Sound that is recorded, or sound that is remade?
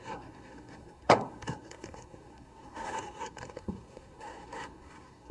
remade